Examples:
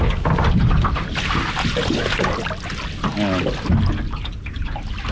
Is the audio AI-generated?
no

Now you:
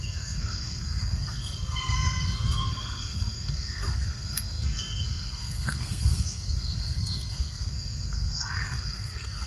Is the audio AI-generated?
yes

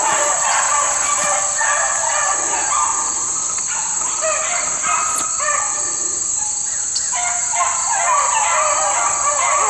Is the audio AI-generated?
no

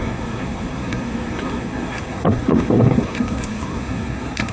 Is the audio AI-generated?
yes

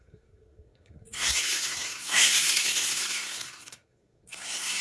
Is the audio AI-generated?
yes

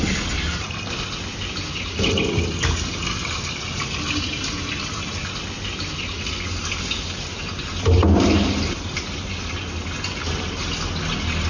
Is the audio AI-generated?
no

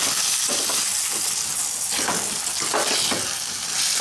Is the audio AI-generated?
no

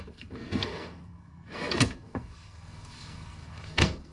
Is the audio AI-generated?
yes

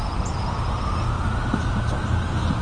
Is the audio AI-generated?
no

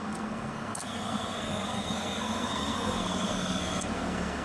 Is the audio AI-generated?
yes